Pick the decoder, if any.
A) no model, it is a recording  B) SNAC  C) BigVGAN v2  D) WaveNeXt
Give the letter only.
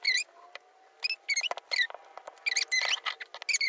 A